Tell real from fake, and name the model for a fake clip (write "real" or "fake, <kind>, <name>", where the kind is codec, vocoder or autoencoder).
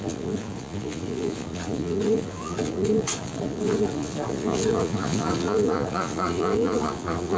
fake, vocoder, Vocos